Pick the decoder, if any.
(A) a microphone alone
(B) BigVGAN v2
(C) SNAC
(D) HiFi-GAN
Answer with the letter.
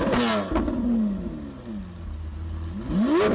A